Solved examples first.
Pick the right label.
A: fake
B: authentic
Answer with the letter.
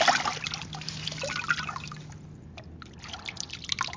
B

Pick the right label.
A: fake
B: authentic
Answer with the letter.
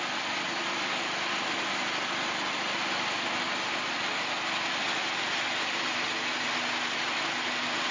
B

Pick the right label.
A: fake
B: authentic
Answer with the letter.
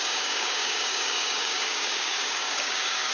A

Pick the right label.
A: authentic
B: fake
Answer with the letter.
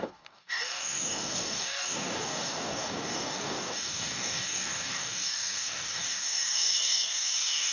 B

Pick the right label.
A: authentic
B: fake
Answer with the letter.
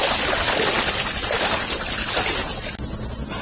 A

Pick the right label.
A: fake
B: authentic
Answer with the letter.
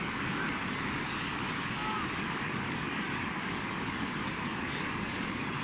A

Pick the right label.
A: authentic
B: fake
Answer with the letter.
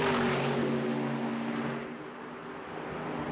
A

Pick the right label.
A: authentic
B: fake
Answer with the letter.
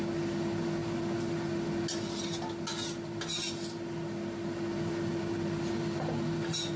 A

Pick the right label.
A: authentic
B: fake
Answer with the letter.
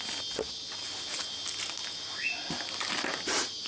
A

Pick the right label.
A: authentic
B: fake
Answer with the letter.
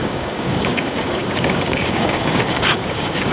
B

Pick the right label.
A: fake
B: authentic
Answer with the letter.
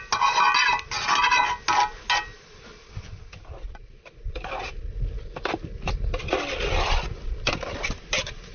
B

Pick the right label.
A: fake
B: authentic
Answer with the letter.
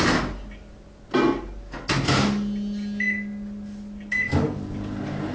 B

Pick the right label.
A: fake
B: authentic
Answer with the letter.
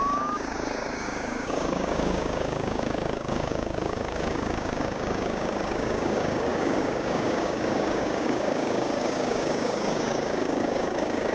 A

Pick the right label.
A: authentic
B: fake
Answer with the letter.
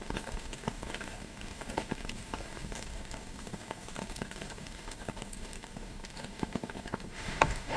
B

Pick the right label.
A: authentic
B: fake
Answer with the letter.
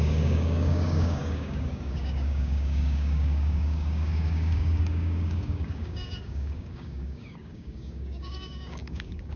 B